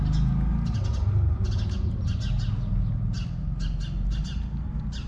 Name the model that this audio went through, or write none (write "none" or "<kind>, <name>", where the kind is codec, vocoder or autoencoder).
none